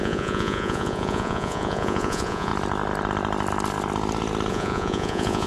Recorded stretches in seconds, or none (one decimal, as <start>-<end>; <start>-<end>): 2.5-4.5